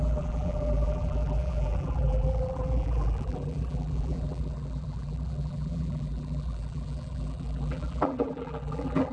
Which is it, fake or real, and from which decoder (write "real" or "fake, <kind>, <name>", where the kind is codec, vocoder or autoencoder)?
fake, vocoder, BigVGAN v2